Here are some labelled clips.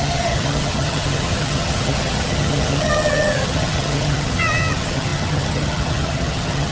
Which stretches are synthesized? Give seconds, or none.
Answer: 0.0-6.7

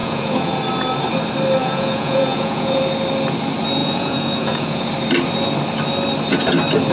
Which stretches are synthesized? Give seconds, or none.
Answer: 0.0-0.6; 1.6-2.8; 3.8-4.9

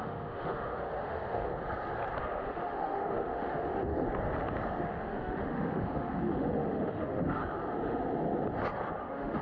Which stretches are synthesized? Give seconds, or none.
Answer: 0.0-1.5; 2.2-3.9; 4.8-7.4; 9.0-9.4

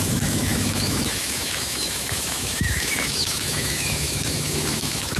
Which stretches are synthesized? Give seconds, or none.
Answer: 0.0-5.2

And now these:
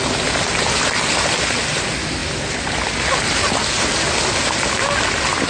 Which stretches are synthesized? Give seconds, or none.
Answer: none

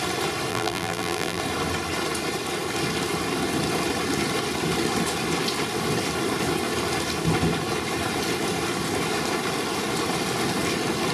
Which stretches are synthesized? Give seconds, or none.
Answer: 0.5-1.4

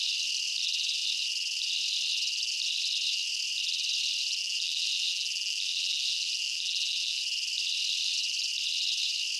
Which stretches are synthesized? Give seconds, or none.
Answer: 4.4-7.2

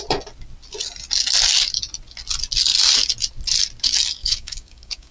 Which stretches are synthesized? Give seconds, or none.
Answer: 4.2-5.1